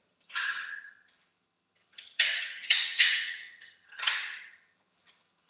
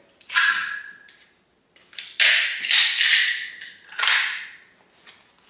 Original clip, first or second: second